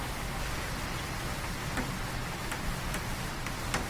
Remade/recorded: recorded